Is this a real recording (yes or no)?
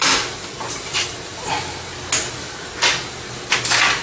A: yes